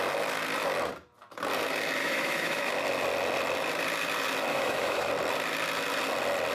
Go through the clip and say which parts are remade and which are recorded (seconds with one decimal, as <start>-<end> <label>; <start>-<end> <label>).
0.0-2.0 recorded; 2.0-2.7 remade; 2.7-4.5 recorded; 4.5-5.1 remade; 5.1-6.5 recorded